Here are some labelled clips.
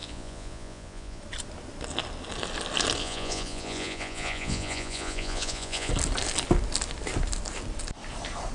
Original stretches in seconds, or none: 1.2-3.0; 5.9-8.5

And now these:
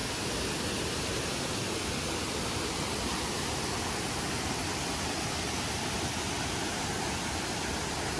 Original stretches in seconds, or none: 0.0-8.2

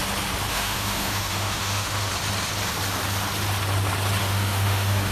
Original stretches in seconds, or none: 0.0-0.5; 2.1-4.2

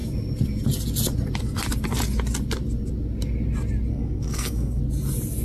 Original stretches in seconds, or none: 0.0-3.9; 4.8-5.4

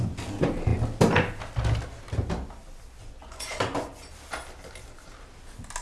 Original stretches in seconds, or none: 0.0-3.0; 4.1-5.8

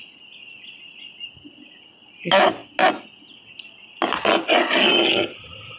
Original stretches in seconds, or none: 0.0-5.8

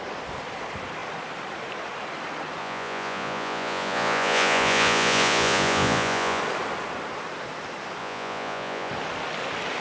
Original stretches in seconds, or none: 0.0-2.6; 6.4-8.0; 8.9-9.8

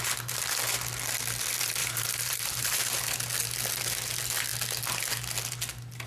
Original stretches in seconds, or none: 0.0-1.8; 3.0-6.1